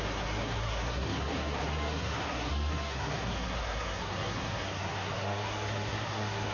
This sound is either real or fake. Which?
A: fake